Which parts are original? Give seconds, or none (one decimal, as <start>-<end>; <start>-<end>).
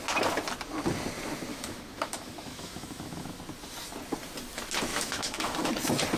0.0-1.5; 3.4-4.9; 5.7-6.2